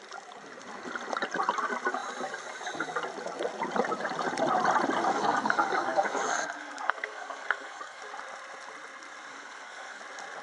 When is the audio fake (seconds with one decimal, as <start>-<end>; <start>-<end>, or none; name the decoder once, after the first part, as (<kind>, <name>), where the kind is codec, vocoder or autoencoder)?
5.1-8.0 (codec, SNAC); 9.3-10.0